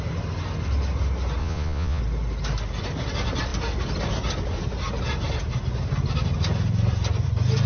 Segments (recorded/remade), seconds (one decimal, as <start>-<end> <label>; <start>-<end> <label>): 0.0-1.4 recorded; 1.4-2.0 remade; 2.0-7.7 recorded